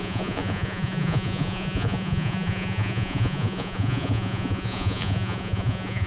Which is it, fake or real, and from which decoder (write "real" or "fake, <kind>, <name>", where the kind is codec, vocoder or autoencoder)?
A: fake, vocoder, Vocos